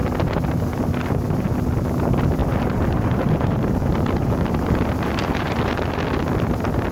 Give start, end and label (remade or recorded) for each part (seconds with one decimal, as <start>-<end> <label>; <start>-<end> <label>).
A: 0.0-2.4 recorded; 2.4-5.7 remade; 5.7-6.9 recorded